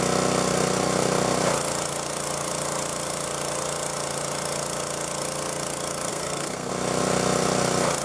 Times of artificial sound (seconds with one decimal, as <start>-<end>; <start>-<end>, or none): 6.1-6.7

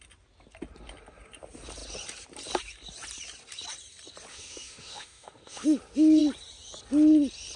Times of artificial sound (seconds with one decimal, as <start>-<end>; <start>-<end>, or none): 4.3-5.8

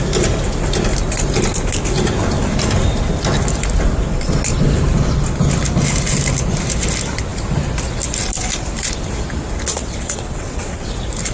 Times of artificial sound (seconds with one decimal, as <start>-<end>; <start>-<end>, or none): 9.7-10.9

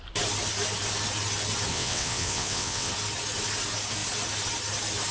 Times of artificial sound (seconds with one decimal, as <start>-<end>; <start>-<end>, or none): 1.7-2.9

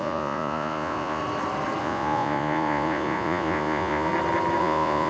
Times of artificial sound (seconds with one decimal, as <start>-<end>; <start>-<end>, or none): 0.0-1.2; 1.8-4.1; 4.6-5.1

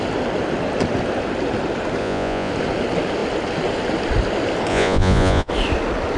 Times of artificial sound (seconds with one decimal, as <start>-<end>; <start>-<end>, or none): 2.0-2.5; 4.7-5.5

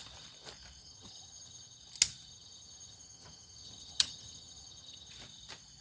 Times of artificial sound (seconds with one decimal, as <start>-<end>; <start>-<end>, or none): 0.8-1.8; 2.3-5.1

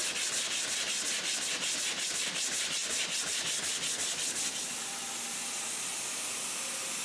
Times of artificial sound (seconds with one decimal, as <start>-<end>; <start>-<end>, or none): none